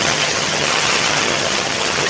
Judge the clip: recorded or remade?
remade